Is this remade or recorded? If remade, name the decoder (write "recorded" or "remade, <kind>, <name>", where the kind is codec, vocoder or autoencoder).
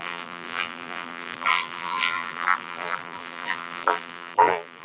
remade, vocoder, BigVGAN v2